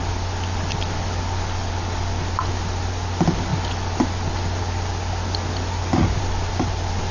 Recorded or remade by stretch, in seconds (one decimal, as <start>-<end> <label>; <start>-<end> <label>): 0.0-7.1 recorded